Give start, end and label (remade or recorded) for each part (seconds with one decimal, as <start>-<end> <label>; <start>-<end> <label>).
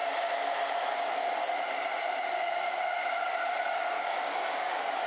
0.0-2.2 recorded; 2.2-3.0 remade; 3.0-3.7 recorded; 3.7-5.1 remade